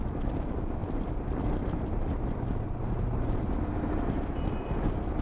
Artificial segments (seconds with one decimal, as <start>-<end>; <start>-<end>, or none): none

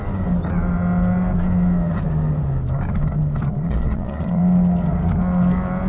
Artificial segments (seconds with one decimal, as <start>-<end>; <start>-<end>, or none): 3.5-4.4

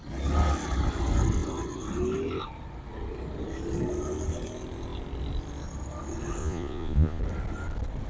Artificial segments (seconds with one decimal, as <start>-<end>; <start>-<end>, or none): 6.4-7.2

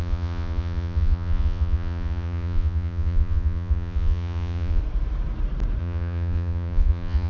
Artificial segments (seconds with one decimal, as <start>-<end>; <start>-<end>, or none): 0.0-4.8; 5.8-7.3

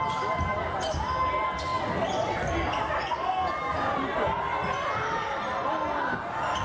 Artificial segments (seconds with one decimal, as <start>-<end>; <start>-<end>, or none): none